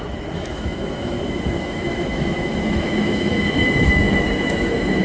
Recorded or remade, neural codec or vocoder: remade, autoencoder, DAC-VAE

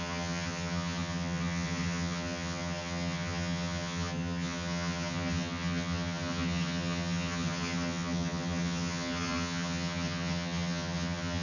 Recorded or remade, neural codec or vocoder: remade, vocoder, HiFi-GAN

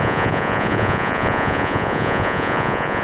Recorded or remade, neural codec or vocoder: remade, vocoder, Vocos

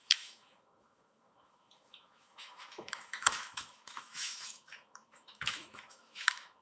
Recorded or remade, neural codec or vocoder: remade, autoencoder, DAC-VAE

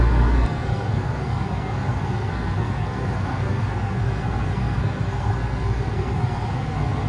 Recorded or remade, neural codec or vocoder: remade, codec, SNAC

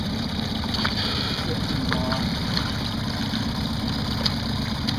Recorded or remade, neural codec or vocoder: recorded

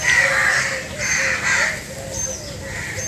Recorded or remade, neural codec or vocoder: recorded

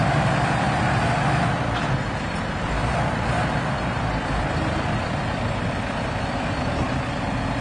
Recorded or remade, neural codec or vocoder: remade, vocoder, BigVGAN v2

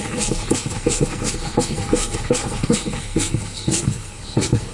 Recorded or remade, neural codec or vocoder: remade, codec, SNAC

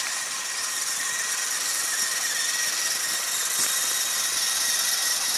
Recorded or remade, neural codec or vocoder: recorded